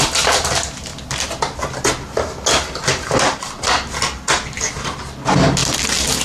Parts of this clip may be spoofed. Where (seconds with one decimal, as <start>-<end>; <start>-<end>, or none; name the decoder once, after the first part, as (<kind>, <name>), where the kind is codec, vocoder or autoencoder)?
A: none

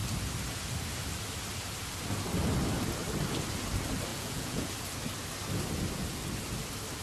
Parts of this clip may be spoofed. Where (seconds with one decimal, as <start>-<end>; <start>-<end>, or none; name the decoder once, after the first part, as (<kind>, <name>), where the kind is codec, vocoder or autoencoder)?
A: 4.1-4.7 (vocoder, Vocos)